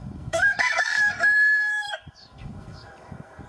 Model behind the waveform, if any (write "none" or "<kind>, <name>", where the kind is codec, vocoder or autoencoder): codec, SNAC